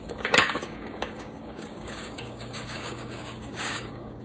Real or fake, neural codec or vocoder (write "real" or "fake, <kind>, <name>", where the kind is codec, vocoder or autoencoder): fake, codec, DAC